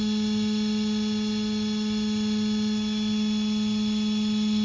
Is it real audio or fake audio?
real